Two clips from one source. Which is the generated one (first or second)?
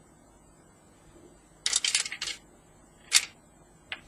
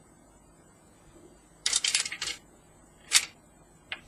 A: second